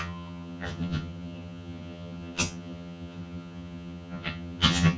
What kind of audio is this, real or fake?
fake